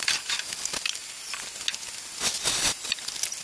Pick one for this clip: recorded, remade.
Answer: recorded